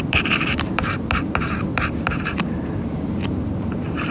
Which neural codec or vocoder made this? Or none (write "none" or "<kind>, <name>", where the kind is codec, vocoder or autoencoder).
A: vocoder, BigVGAN v2